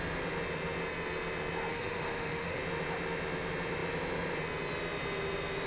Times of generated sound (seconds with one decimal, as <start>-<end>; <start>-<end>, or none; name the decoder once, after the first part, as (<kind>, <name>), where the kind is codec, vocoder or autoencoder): 1.7-2.6 (autoencoder, DAC-VAE)